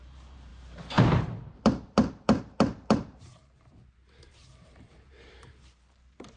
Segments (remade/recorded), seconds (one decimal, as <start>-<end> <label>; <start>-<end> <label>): 0.0-6.4 remade